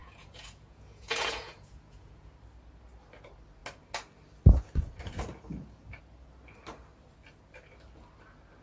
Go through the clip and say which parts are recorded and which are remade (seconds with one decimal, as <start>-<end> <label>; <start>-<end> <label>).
0.0-2.3 remade; 2.3-8.6 recorded